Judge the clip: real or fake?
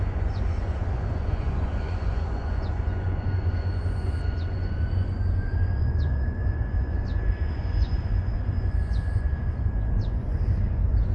fake